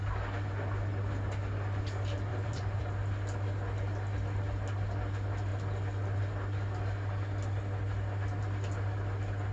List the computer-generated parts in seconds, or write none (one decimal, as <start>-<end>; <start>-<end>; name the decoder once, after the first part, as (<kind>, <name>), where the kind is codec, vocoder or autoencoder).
2.3-2.8 (vocoder, BigVGAN v2)